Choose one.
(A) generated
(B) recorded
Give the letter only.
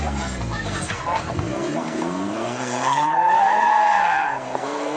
A